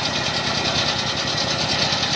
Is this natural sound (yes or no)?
yes